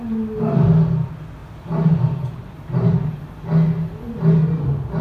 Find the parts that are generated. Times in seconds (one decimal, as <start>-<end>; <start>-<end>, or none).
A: 1.4-3.2